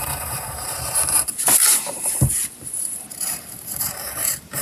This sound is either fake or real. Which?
fake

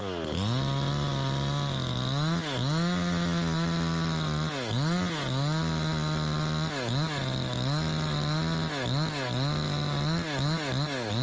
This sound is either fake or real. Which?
real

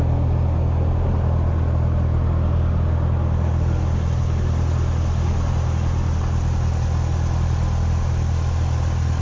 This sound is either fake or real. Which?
real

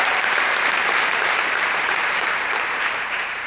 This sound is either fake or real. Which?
fake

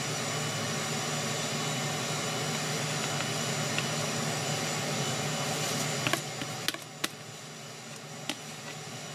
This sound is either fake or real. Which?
real